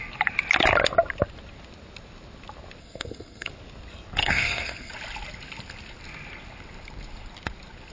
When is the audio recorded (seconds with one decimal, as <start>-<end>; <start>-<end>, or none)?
0.0-2.8; 3.5-4.2; 4.9-7.9